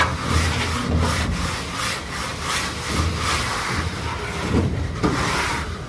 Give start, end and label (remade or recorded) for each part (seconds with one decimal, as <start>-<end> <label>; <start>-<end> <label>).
0.0-2.3 recorded; 2.3-5.5 remade; 5.5-5.9 recorded